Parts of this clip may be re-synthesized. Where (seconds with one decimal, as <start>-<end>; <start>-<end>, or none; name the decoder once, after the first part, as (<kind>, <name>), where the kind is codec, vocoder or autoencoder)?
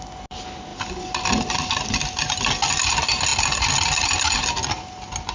none